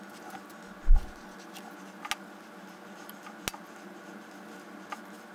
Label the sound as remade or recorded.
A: recorded